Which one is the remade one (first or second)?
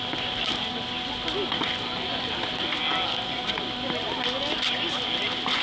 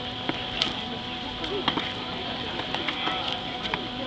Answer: second